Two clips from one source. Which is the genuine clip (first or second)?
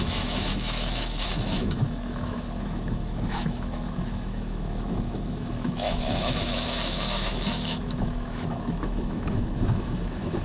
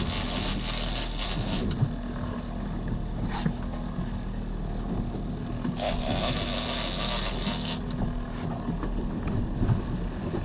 second